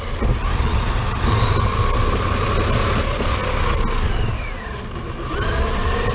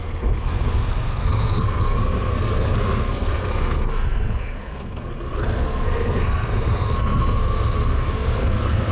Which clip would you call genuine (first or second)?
first